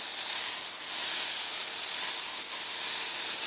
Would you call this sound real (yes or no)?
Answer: yes